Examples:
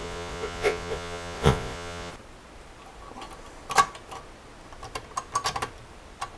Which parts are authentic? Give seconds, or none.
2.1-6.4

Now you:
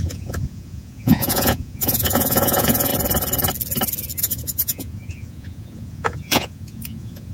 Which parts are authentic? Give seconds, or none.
2.9-4.2

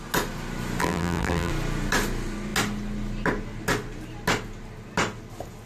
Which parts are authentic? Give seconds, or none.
0.0-0.8; 1.5-5.7

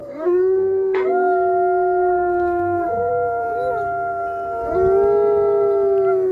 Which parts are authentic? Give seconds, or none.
3.1-6.3

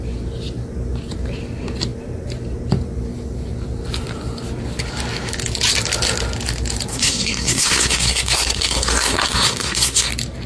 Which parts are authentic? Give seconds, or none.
0.0-6.9; 10.1-10.5